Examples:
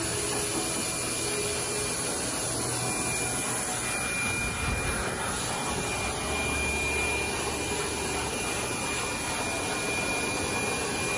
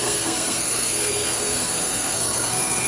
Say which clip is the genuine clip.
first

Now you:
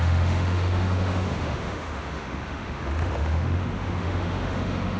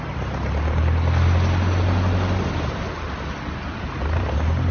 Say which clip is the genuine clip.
second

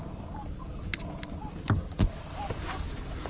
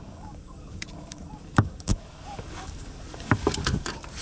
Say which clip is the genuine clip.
first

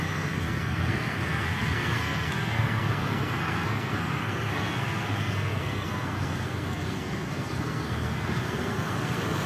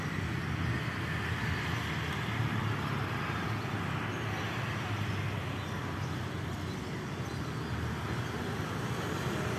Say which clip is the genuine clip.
second